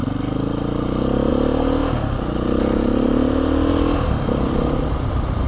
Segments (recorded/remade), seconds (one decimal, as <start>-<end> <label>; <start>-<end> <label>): 0.0-5.5 recorded